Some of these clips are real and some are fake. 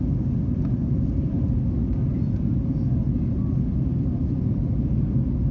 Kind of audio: real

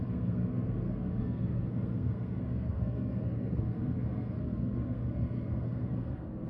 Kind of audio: fake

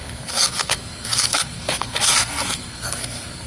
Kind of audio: fake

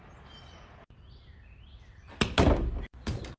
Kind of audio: real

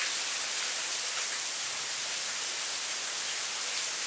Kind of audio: real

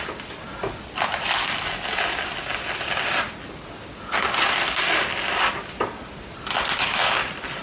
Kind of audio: real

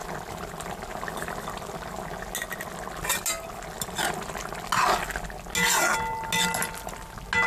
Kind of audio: real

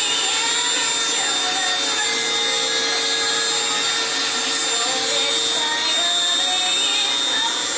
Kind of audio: real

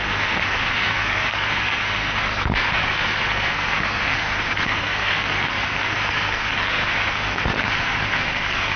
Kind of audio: fake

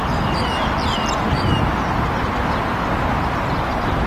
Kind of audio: real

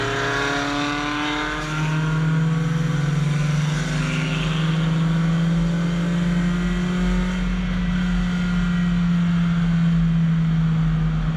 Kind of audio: real